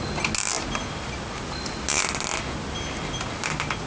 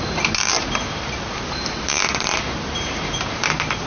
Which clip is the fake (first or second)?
second